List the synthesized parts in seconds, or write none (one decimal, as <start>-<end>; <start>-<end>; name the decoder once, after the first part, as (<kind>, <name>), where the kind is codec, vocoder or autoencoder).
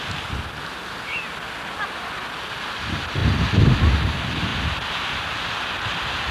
none